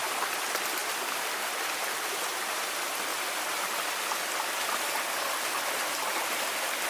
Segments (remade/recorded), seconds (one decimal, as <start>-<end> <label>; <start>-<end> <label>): 0.0-3.1 recorded; 3.1-4.4 remade; 4.4-6.9 recorded

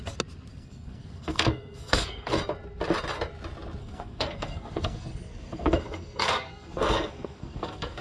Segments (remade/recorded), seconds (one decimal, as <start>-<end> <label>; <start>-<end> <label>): 0.0-0.5 recorded; 0.5-2.4 remade; 2.4-3.8 recorded; 3.8-8.0 remade

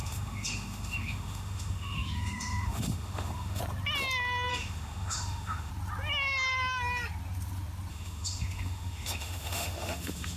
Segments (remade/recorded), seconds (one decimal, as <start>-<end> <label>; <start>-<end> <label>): 0.0-3.6 remade; 3.6-4.5 recorded; 4.5-5.7 remade; 5.7-7.9 recorded; 7.9-10.4 remade